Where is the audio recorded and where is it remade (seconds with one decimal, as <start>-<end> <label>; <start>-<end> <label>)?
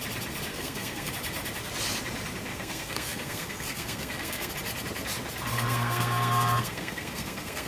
0.0-0.5 recorded; 0.5-1.1 remade; 1.1-2.5 recorded; 2.5-4.5 remade; 4.5-5.5 recorded; 5.5-7.7 remade